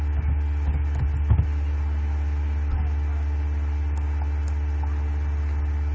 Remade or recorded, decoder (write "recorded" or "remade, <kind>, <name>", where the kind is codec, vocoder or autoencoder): recorded